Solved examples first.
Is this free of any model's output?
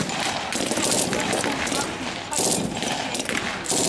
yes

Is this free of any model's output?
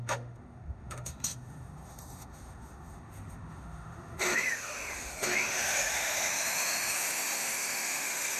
no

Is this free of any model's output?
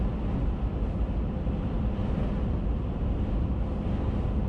yes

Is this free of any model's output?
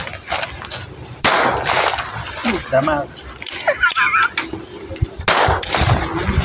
yes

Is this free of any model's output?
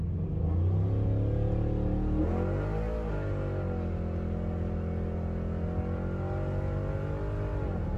yes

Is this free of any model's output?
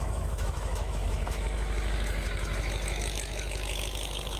no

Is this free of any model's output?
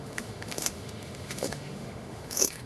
no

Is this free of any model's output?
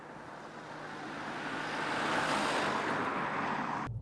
yes